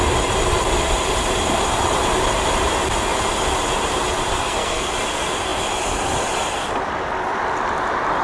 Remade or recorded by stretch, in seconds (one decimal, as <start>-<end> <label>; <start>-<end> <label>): 0.0-4.3 recorded; 4.3-4.9 remade; 4.9-8.2 recorded